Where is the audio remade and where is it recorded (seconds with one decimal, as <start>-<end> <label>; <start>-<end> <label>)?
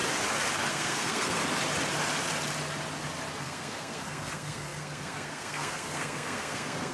0.0-0.7 recorded; 0.7-1.4 remade; 1.4-3.4 recorded; 3.4-6.9 remade